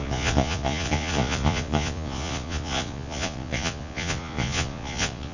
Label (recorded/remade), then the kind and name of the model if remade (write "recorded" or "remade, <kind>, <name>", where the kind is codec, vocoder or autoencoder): remade, vocoder, Vocos